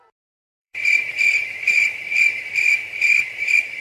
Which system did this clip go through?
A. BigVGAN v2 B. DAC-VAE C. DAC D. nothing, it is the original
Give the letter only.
A